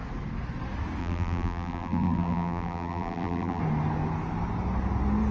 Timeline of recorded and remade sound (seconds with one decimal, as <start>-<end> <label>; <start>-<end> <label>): 0.0-1.0 recorded; 1.0-3.6 remade; 3.6-5.3 recorded

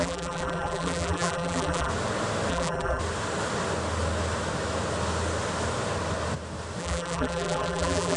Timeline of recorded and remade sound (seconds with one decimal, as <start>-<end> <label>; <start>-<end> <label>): 0.0-1.9 remade; 1.9-2.5 recorded; 2.5-3.0 remade; 3.0-6.8 recorded; 6.8-8.2 remade

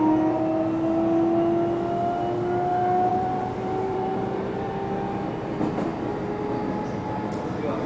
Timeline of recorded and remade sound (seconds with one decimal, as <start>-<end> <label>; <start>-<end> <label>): 0.0-3.1 recorded; 3.1-4.7 remade; 4.7-7.9 recorded

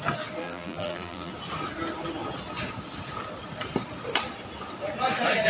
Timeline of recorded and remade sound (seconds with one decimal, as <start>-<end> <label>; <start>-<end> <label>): 0.0-0.4 recorded; 0.4-1.3 remade; 1.3-5.5 recorded

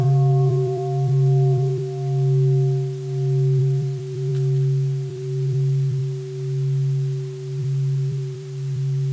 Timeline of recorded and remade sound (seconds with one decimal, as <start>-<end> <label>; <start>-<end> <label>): 0.0-1.8 remade; 1.8-3.6 recorded; 3.6-4.3 remade; 4.3-5.1 recorded; 5.1-6.0 remade; 6.0-7.6 recorded; 7.6-9.1 remade

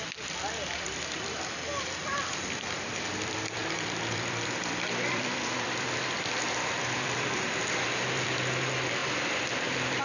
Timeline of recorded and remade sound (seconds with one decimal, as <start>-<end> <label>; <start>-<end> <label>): 0.0-10.0 remade

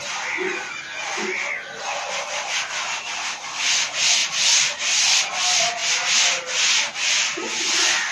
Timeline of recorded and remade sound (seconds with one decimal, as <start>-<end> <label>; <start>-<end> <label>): 0.0-4.2 recorded; 4.2-5.2 remade; 5.2-5.8 recorded; 5.8-6.6 remade; 6.6-8.1 recorded